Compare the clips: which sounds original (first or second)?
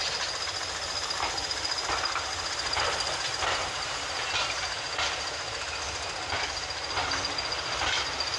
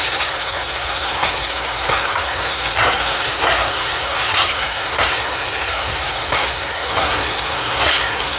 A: first